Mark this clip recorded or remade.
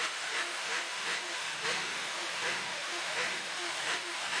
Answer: remade